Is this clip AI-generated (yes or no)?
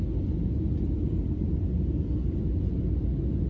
no